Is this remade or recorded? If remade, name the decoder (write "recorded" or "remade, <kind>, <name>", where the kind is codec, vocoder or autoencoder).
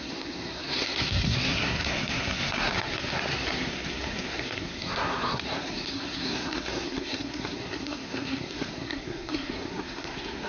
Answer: remade, codec, SNAC